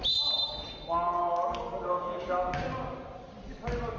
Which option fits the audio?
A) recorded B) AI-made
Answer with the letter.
A